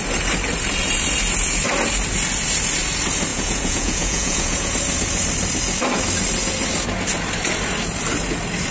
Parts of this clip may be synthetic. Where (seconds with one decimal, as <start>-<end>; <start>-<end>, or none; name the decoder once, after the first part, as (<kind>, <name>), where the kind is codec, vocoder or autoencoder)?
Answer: 3.3-4.7 (vocoder, Vocos)